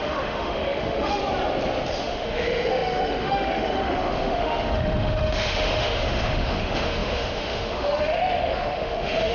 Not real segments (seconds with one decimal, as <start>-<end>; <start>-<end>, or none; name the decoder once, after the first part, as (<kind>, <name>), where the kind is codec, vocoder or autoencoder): 0.0-1.2 (autoencoder, DAC-VAE); 2.0-9.3